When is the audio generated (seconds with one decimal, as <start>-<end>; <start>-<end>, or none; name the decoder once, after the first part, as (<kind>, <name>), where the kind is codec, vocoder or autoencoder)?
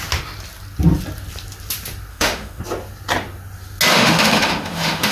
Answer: 2.1-2.6 (autoencoder, DAC-VAE); 3.9-5.1